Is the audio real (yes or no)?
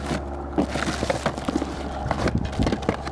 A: yes